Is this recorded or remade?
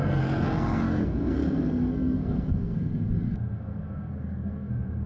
remade